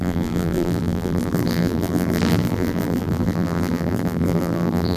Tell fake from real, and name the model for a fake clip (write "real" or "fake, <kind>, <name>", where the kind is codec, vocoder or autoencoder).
fake, vocoder, BigVGAN v2